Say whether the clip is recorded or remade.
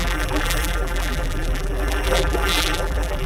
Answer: remade